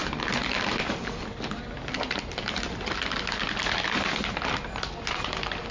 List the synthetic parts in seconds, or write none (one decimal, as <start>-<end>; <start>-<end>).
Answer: none

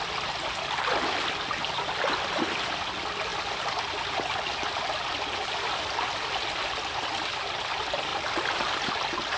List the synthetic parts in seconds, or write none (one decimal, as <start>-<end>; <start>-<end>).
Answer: none

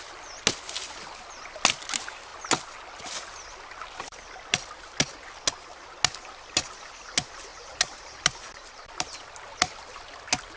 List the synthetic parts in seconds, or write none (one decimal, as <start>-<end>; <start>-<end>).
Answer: none

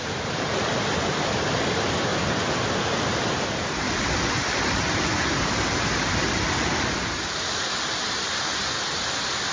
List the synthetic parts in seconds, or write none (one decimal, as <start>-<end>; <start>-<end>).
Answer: none

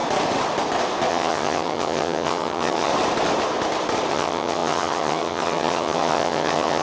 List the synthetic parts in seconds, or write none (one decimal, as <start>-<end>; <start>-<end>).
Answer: 1.1-2.9; 4.1-6.8

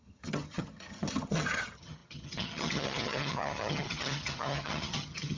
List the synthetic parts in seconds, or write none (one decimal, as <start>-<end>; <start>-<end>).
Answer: 0.0-5.4

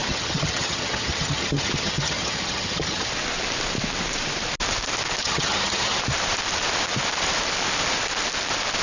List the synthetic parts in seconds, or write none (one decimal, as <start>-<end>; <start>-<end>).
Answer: 0.0-3.1; 5.2-6.0